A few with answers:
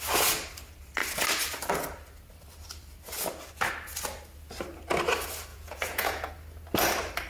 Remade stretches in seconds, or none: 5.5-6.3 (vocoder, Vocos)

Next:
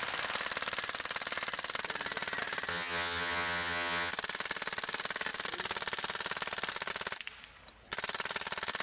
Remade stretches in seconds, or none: 2.7-4.1 (vocoder, HiFi-GAN)

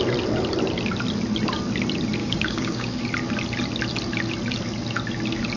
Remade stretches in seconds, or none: 2.2-3.0 (codec, DAC)

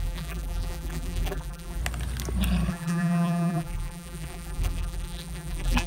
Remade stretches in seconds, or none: 0.0-1.8 (vocoder, BigVGAN v2); 2.7-5.9